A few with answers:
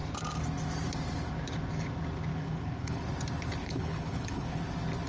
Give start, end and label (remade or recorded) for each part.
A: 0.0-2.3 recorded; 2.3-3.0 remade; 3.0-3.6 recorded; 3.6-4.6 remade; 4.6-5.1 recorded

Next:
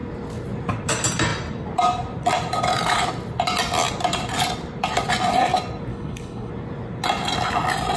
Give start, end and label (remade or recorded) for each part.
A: 0.0-5.9 recorded; 5.9-6.5 remade; 6.5-8.0 recorded

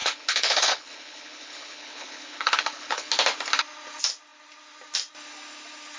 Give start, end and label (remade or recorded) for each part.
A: 0.0-3.1 remade; 3.1-6.0 recorded

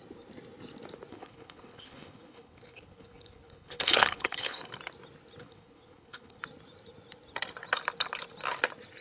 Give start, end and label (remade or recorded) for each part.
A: 0.0-1.1 recorded; 1.1-4.6 remade; 4.6-5.4 recorded; 5.4-6.4 remade; 6.4-9.0 recorded

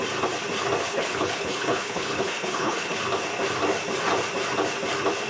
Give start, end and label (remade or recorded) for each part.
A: 0.0-0.8 recorded; 0.8-3.0 remade; 3.0-5.3 recorded

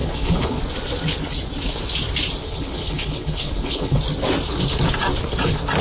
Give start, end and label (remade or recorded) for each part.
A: 0.0-0.6 remade; 0.6-2.4 recorded; 2.4-4.0 remade; 4.0-5.8 recorded